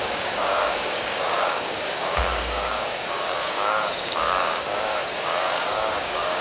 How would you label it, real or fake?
fake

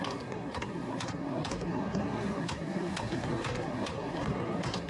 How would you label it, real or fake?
fake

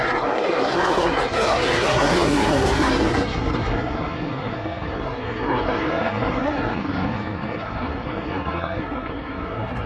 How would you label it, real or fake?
fake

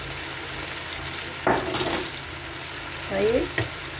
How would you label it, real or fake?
real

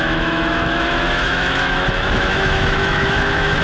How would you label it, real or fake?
fake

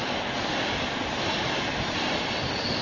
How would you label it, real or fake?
real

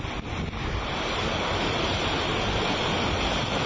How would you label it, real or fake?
real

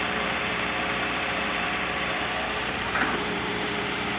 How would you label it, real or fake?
fake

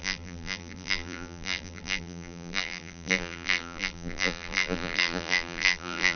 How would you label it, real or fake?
fake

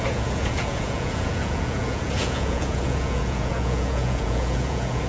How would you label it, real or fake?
fake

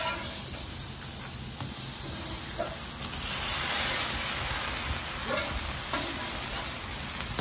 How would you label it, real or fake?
real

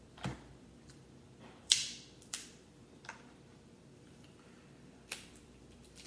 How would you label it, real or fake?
fake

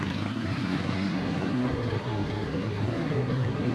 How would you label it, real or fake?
fake